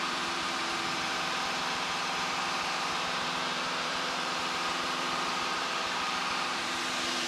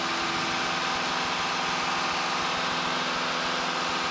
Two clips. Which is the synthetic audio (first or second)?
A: first